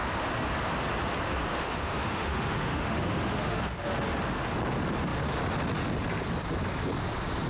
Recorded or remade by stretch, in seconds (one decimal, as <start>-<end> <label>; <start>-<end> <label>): 0.0-1.5 recorded; 1.5-3.6 remade; 3.6-7.5 recorded